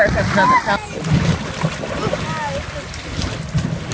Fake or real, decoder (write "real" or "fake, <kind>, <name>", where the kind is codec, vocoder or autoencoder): real